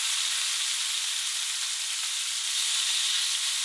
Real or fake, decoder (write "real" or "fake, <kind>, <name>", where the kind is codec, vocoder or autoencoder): real